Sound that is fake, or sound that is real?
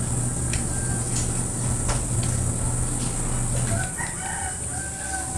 real